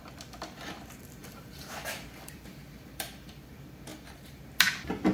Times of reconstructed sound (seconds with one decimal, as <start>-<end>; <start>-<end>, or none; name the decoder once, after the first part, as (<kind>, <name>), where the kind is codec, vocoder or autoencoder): 1.2-3.5 (vocoder, BigVGAN v2); 3.9-4.4